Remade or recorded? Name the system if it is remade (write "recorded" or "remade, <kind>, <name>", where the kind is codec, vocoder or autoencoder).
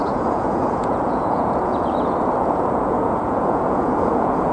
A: remade, vocoder, Vocos